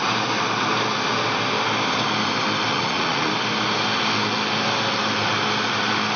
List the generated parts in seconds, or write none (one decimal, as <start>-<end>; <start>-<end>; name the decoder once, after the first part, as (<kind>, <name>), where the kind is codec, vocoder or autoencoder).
2.7-3.3 (vocoder, Vocos)